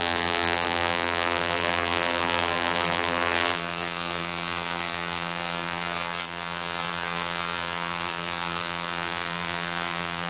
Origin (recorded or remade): remade